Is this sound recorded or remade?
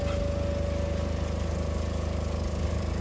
recorded